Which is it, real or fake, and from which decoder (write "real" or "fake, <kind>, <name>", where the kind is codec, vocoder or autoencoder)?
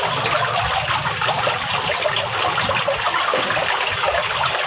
real